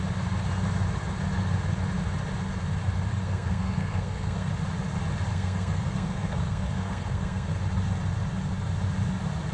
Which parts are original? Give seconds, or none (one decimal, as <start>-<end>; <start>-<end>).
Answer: 0.0-3.1; 4.5-5.3; 7.6-9.5